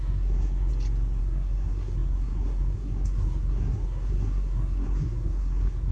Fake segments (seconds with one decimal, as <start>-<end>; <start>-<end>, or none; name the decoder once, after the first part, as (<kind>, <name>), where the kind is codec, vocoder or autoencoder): 0.0-0.7 (codec, SNAC); 1.2-5.9